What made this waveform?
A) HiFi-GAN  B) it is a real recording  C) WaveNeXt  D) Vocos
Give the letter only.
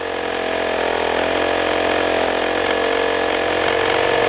B